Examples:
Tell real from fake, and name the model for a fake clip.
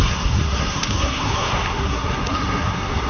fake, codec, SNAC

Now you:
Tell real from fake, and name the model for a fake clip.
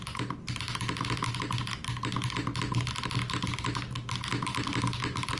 real